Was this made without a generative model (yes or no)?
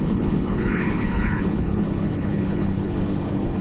no